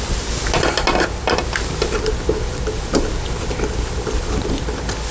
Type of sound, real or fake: real